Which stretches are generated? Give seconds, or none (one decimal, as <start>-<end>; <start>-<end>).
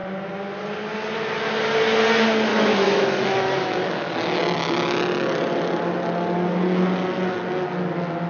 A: 2.5-4.1